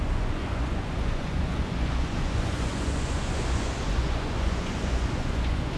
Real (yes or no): no